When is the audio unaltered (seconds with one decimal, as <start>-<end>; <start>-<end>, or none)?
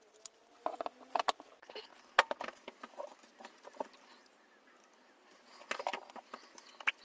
0.0-7.0